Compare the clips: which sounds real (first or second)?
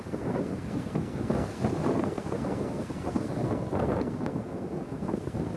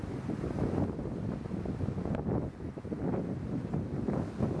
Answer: second